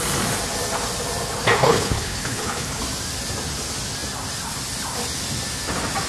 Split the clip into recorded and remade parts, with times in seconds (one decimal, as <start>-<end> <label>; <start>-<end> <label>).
0.0-1.6 recorded; 1.6-2.8 remade; 2.8-6.1 recorded